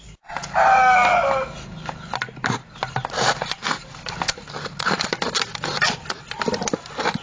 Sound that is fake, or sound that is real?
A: real